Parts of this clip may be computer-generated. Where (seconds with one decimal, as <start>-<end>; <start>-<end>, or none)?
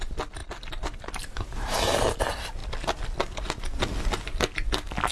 none